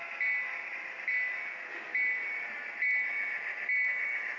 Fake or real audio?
real